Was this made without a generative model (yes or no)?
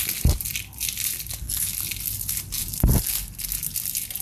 yes